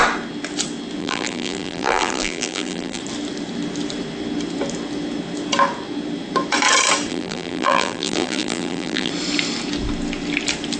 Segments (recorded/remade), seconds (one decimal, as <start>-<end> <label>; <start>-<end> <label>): 0.0-1.0 recorded; 1.0-3.0 remade; 3.0-7.1 recorded; 7.1-9.1 remade; 9.1-10.8 recorded

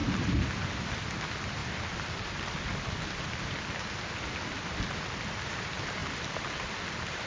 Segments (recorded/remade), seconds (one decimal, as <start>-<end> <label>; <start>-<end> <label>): 0.0-0.6 remade; 0.6-6.0 recorded; 6.0-7.3 remade

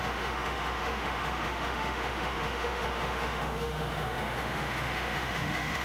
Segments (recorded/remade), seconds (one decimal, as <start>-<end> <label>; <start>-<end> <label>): 0.0-5.8 remade

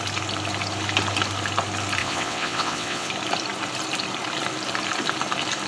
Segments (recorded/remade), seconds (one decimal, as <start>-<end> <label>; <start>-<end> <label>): 0.0-2.0 recorded; 2.0-3.1 remade; 3.1-5.7 recorded

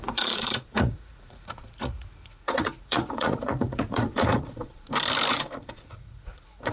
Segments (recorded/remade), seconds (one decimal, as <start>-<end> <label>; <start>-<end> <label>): 0.0-4.7 remade; 4.7-5.3 recorded; 5.3-6.7 remade